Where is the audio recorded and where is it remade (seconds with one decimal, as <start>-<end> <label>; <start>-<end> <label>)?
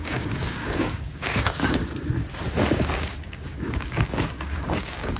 0.0-1.8 remade; 1.8-2.7 recorded; 2.7-5.2 remade